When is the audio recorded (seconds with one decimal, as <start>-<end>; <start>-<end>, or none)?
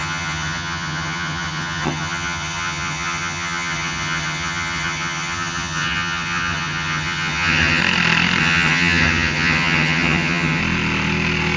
7.8-8.4; 10.6-11.6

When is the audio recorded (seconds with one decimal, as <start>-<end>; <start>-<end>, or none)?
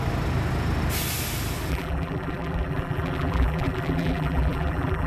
0.0-1.7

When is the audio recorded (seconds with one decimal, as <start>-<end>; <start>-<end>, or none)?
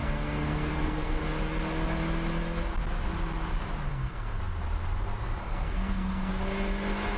1.2-3.9; 4.4-5.4; 6.3-7.2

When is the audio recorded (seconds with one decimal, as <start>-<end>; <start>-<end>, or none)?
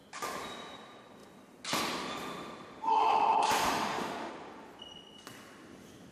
0.0-3.6; 4.3-6.1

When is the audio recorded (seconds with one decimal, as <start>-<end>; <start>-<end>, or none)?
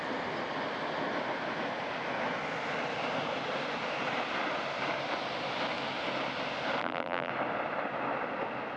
0.0-6.8; 7.3-8.8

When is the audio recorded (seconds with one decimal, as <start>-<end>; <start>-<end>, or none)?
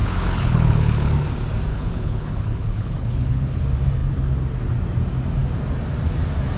1.1-1.7; 3.6-6.6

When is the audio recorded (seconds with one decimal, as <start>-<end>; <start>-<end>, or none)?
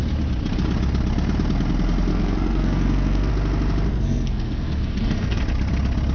0.0-2.1; 3.3-3.9; 5.4-6.1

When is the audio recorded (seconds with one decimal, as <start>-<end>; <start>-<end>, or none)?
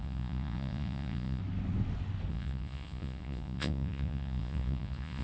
1.4-2.3